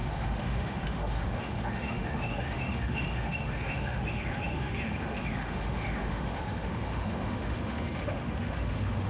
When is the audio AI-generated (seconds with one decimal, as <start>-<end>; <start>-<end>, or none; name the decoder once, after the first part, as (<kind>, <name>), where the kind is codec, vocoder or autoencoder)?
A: 0.0-9.1 (autoencoder, DAC-VAE)